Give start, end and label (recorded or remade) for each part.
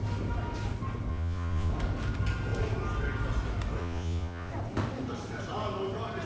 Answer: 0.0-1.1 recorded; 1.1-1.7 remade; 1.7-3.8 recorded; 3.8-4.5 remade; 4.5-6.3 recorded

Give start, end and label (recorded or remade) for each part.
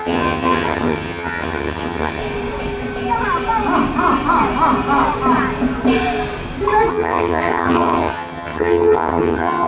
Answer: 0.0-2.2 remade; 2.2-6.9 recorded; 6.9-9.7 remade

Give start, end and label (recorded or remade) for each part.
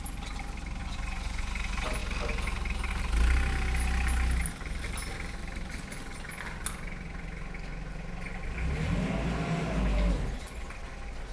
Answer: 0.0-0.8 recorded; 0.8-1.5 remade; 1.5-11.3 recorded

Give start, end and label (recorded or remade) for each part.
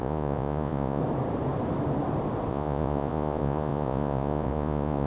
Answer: 0.0-1.0 remade; 1.0-2.5 recorded; 2.5-5.1 remade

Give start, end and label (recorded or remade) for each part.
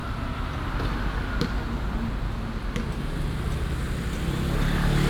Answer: 0.0-5.1 recorded